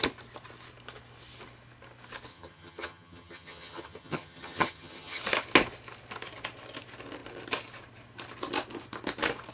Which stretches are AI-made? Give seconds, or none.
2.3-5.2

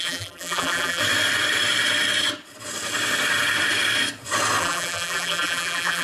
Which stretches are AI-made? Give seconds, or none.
0.0-1.0; 4.6-6.0